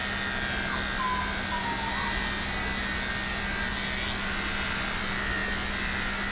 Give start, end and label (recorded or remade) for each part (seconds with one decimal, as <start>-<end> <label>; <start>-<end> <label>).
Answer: 0.0-6.3 recorded